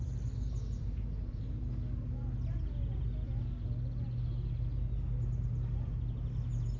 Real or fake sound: real